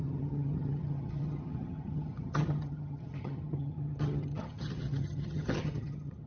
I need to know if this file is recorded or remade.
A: remade